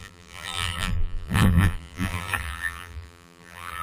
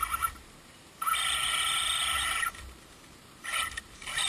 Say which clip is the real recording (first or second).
second